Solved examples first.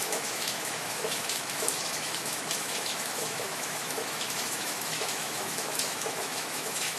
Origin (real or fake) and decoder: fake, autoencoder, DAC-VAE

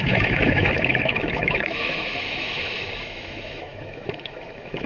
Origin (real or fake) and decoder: fake, autoencoder, DAC-VAE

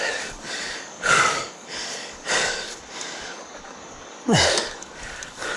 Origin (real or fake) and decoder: fake, codec, DAC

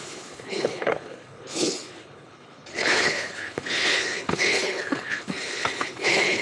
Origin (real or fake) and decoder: fake, codec, HILCodec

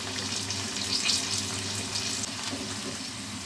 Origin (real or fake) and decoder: real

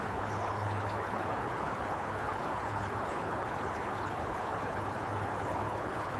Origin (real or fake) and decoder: fake, codec, HILCodec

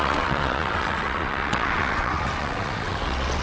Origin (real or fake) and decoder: fake, vocoder, WaveNeXt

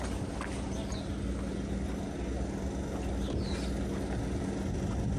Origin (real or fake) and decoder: real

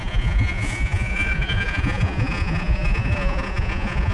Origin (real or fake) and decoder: fake, vocoder, Vocos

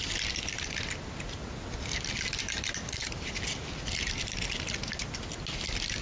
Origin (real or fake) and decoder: real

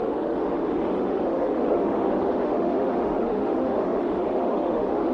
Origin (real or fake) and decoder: fake, autoencoder, DAC-VAE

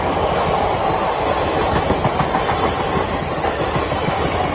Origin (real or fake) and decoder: real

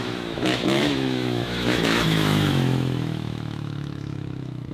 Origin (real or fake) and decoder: fake, autoencoder, DAC-VAE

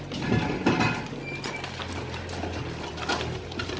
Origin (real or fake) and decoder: real